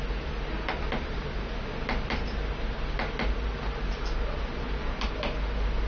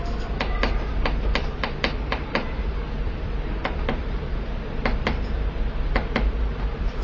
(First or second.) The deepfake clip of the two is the second